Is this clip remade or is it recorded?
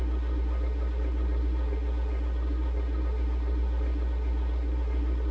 remade